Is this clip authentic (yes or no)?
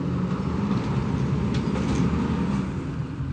yes